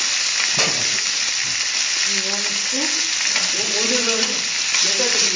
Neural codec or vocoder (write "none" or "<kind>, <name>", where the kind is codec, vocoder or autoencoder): none